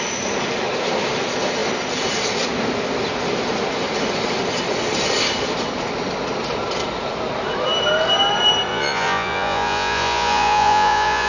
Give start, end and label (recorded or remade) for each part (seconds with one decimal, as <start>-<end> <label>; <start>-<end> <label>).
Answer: 0.0-8.7 recorded; 8.7-11.3 remade